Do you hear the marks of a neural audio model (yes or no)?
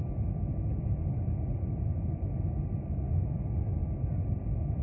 yes